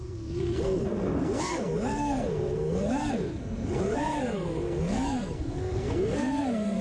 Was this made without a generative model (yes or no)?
no